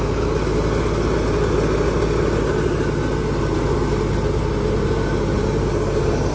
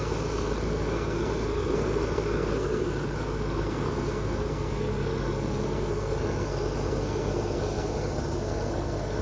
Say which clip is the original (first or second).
first